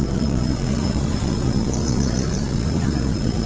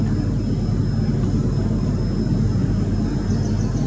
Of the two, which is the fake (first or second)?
first